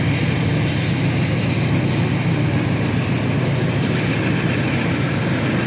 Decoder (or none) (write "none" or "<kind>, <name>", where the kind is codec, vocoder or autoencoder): none